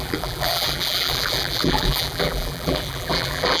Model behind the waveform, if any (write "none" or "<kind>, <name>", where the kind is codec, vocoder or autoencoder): vocoder, BigVGAN v2